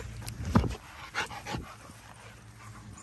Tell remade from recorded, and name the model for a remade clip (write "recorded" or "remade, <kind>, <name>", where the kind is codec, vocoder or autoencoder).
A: recorded